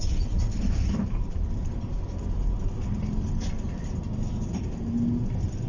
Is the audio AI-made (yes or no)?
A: no